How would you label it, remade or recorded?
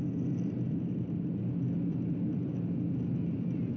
recorded